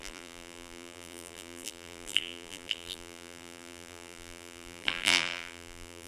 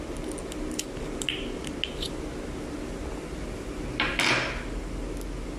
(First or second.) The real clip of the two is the second